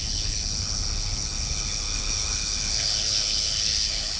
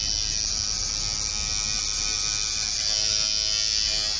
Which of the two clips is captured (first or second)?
second